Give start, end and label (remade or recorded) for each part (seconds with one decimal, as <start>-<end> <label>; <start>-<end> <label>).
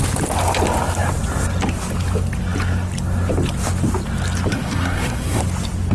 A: 0.0-4.5 recorded; 4.5-5.4 remade; 5.4-5.9 recorded